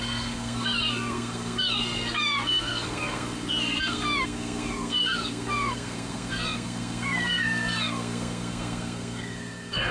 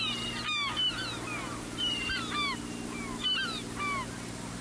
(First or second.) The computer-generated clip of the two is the first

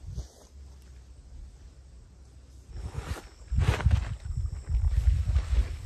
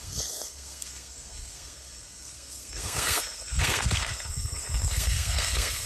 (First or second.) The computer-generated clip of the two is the second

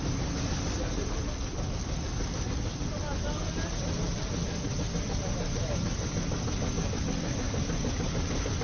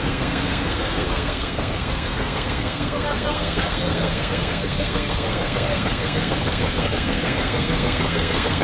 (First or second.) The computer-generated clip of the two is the second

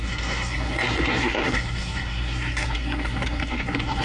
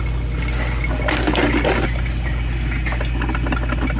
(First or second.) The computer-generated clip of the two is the first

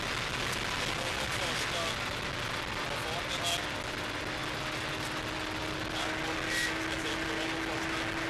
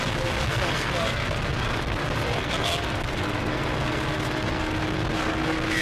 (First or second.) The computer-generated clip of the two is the second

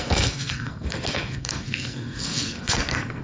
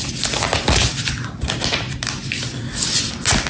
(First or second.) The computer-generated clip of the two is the first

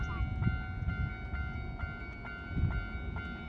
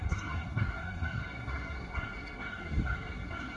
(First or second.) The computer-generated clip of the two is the second